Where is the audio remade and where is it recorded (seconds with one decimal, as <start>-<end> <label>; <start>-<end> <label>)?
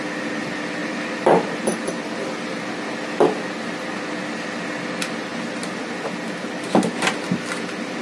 0.0-8.0 recorded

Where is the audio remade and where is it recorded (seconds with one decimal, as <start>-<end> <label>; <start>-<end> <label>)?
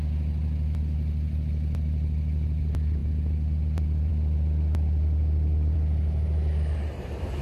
0.0-7.4 recorded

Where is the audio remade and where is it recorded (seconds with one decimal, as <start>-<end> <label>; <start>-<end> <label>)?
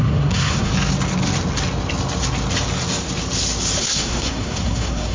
0.0-0.7 remade; 0.7-3.8 recorded; 3.8-5.1 remade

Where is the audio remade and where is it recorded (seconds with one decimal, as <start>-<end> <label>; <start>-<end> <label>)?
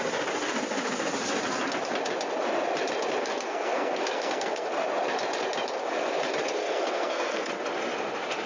0.0-3.2 recorded; 3.2-4.7 remade; 4.7-6.6 recorded; 6.6-7.5 remade; 7.5-8.5 recorded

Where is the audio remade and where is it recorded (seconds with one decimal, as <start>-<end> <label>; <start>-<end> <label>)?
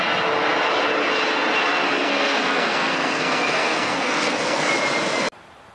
0.0-2.0 recorded; 2.0-4.7 remade; 4.7-5.7 recorded